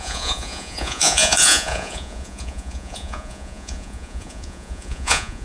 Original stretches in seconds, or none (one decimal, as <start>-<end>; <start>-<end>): none